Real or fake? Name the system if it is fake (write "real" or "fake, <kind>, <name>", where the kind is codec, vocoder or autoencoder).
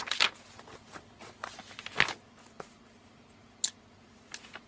real